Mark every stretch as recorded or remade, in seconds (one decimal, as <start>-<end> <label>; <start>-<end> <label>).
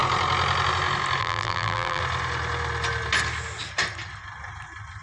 0.0-1.2 recorded; 1.2-2.0 remade; 2.0-5.0 recorded